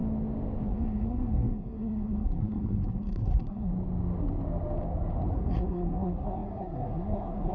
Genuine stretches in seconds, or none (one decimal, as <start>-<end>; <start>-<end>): 0.0-0.6; 3.7-5.3